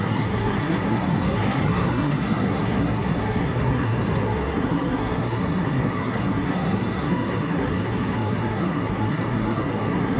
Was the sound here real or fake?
fake